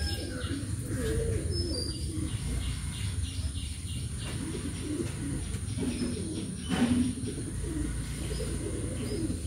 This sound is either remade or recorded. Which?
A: recorded